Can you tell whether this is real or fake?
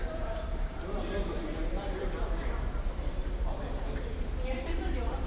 fake